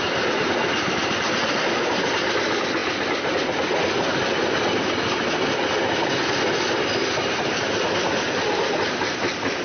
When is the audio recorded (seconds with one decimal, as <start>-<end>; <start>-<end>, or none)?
0.0-9.6